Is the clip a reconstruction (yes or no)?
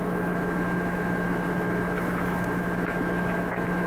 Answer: yes